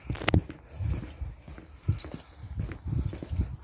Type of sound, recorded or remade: recorded